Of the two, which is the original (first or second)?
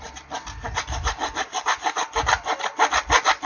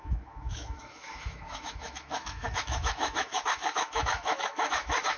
first